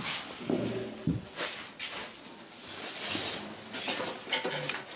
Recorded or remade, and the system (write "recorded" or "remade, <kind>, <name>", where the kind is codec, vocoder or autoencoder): recorded